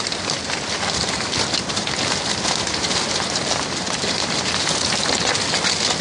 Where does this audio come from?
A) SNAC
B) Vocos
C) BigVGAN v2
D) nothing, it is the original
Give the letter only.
D